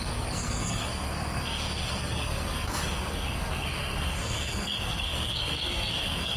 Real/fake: fake